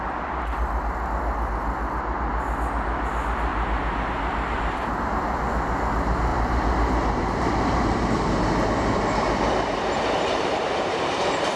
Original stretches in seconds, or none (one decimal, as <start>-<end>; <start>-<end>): 0.0-3.5; 5.0-6.3; 11.1-11.6